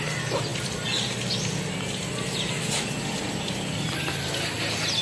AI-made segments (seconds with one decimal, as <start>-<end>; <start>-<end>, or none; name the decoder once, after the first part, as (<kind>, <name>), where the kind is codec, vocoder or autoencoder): none